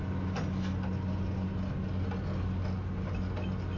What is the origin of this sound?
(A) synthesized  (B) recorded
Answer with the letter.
B